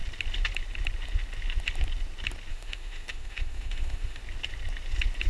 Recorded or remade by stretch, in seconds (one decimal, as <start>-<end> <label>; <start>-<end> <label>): 0.0-2.5 recorded; 2.5-4.2 remade; 4.2-5.3 recorded